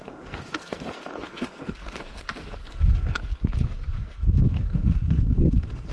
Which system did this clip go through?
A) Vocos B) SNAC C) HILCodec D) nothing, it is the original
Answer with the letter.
B